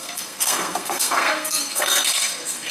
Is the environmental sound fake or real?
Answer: fake